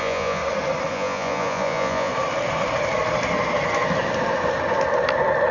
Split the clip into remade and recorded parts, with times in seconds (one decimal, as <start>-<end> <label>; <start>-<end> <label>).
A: 0.0-0.4 remade; 0.4-0.9 recorded; 0.9-2.1 remade; 2.1-5.5 recorded